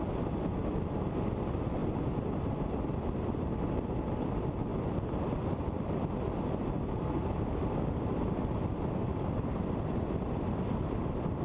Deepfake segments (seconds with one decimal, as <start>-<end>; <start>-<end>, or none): none